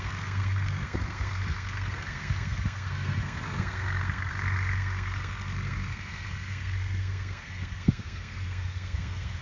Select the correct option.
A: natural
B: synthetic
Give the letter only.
B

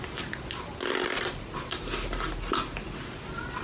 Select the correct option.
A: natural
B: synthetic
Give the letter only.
A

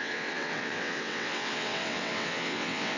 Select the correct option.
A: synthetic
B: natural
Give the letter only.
A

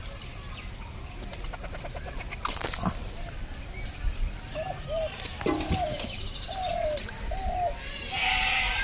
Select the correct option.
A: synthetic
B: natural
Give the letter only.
B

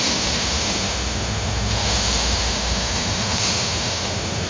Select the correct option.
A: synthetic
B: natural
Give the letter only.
A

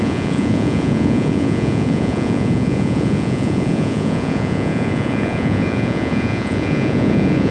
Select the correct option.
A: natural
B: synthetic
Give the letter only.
B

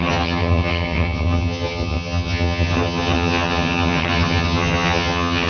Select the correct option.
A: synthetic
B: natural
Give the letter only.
A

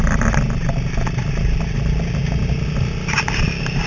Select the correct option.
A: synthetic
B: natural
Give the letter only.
B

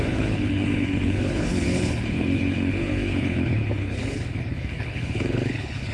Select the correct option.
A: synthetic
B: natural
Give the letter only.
A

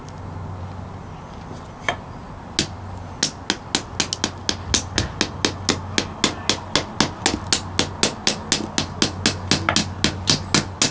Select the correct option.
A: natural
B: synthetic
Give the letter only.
A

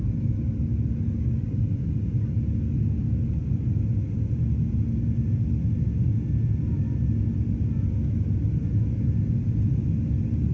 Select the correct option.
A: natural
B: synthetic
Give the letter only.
A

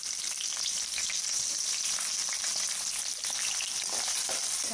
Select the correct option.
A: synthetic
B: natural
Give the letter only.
A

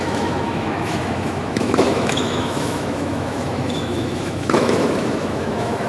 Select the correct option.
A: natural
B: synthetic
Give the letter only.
B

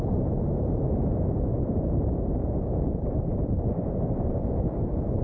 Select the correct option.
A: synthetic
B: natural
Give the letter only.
A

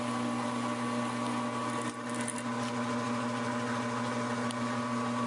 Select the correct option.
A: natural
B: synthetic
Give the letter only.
A